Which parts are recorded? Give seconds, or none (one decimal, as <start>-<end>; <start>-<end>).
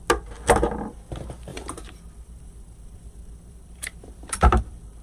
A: 0.0-1.5; 4.5-5.0